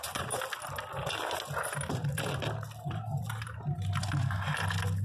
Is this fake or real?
real